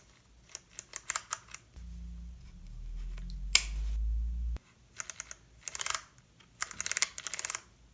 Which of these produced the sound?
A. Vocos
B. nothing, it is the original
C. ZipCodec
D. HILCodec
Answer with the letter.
B